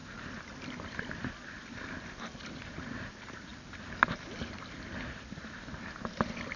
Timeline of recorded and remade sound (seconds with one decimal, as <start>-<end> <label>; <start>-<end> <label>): 0.0-1.3 remade; 1.3-3.5 recorded; 3.5-6.1 remade; 6.1-6.6 recorded